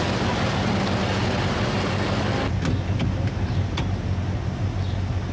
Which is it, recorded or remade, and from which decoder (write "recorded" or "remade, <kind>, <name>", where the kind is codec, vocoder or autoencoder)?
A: recorded